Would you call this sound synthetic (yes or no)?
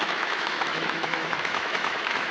yes